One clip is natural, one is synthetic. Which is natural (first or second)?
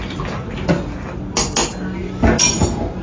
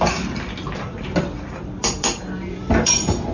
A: first